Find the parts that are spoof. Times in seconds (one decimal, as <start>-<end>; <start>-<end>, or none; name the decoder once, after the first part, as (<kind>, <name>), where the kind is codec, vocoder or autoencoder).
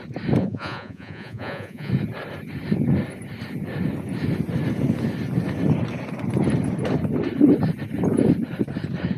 0.4-1.9 (vocoder, Vocos)